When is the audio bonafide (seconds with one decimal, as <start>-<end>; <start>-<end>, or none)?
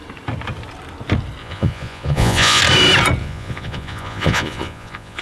0.0-1.4; 2.6-3.2